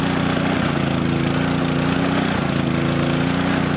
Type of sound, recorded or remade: recorded